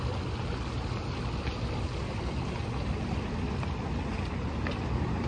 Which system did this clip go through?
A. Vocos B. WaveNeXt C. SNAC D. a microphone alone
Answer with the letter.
D